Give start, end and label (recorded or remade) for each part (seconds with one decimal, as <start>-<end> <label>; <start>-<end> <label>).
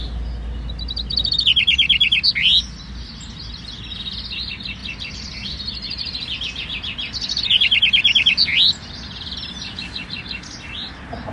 0.0-11.3 recorded